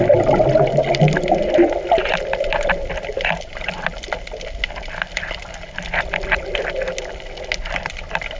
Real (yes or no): yes